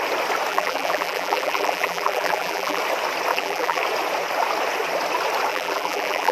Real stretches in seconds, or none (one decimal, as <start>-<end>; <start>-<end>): 0.0-0.5; 2.8-3.3; 3.8-5.5